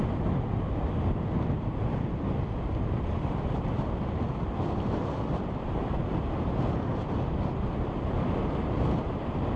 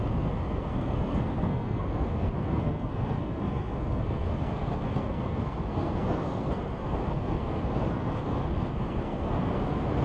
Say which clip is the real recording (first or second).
first